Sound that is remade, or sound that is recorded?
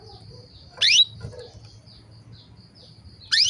recorded